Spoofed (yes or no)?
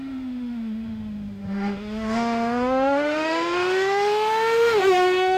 yes